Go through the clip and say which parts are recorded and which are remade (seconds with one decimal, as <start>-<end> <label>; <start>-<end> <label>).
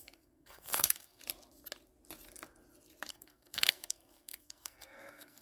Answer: 0.0-1.2 remade; 1.2-3.1 recorded; 3.1-5.4 remade